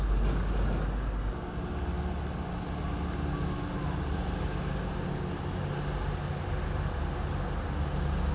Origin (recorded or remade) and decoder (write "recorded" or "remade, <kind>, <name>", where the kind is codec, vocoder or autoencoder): recorded